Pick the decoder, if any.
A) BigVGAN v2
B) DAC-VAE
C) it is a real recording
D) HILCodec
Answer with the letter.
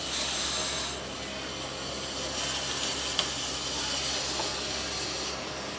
C